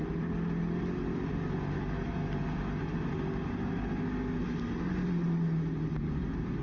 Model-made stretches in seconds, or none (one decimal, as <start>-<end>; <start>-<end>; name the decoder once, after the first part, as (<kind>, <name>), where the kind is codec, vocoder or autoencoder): none